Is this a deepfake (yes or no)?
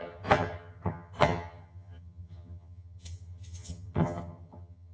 yes